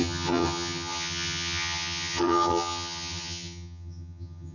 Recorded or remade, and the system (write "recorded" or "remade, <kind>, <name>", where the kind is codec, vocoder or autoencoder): remade, vocoder, HiFi-GAN